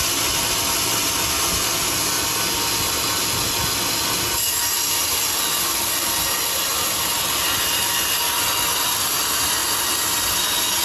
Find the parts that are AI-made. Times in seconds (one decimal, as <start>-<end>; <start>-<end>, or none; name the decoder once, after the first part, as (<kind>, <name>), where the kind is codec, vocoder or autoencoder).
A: none